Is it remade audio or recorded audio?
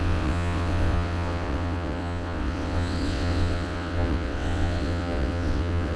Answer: remade